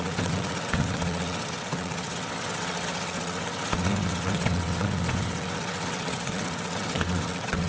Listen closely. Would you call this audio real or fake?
fake